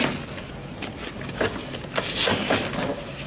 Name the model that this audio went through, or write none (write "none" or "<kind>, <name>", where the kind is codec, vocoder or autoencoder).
none